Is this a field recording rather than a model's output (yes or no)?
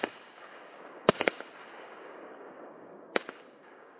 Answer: no